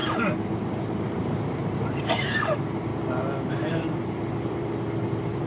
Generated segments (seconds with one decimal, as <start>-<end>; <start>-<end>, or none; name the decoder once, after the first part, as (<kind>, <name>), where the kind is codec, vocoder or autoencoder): 0.0-2.9 (vocoder, BigVGAN v2); 3.5-5.5

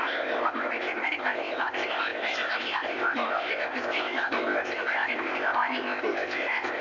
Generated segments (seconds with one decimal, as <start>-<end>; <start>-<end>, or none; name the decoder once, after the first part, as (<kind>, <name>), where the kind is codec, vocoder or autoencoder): 0.0-6.8 (codec, ZipCodec)

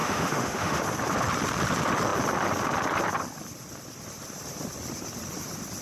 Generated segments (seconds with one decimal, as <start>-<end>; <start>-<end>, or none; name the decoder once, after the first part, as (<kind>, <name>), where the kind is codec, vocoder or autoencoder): 0.0-0.8 (autoencoder, DAC-VAE)

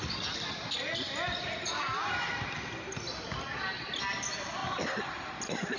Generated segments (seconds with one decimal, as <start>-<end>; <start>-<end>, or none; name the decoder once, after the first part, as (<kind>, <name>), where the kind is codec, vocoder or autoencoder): none